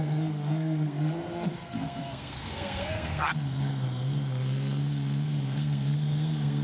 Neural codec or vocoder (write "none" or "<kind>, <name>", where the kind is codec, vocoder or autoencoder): codec, SNAC